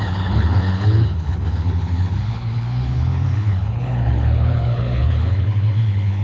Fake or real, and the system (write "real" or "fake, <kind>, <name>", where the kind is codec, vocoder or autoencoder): fake, codec, HILCodec